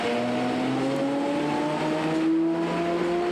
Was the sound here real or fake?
real